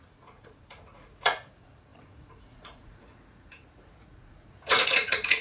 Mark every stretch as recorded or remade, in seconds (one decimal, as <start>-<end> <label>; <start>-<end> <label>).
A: 0.0-5.4 remade